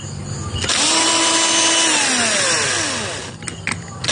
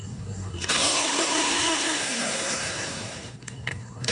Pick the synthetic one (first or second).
second